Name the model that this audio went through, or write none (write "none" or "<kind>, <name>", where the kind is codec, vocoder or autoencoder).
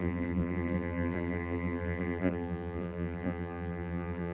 vocoder, BigVGAN v2